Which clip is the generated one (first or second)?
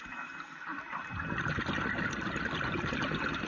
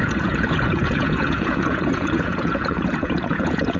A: second